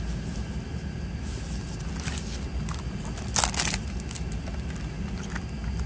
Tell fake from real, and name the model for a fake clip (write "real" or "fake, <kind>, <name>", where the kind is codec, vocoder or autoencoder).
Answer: real